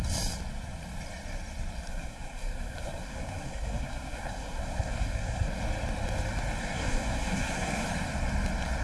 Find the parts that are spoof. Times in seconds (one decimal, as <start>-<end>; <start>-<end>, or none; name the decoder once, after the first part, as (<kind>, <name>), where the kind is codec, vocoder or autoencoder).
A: 1.9-5.6 (codec, SNAC); 6.6-7.9